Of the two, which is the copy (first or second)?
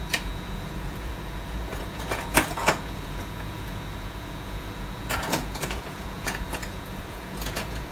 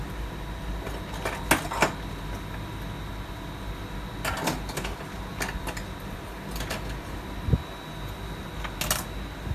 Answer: first